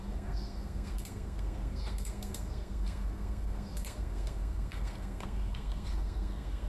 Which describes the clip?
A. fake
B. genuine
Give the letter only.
A